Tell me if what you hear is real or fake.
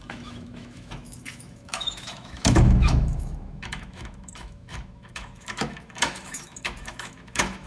fake